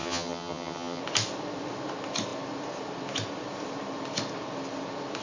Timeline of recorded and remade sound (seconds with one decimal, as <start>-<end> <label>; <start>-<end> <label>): 0.0-1.0 remade; 1.0-5.2 recorded